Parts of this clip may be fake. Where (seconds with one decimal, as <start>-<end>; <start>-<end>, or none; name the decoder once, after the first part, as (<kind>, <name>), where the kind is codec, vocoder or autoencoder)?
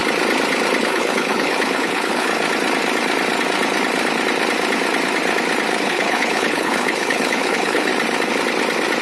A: 0.8-2.3 (codec, HILCodec); 5.8-7.9